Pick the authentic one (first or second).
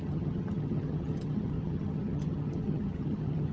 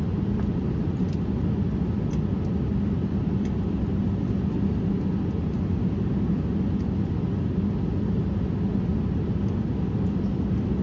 second